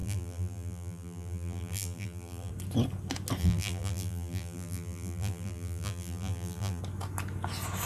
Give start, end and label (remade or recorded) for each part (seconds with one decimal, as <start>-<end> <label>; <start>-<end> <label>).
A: 0.0-2.5 remade; 2.5-3.4 recorded; 3.4-6.8 remade; 6.8-7.9 recorded